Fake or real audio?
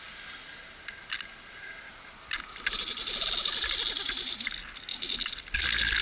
real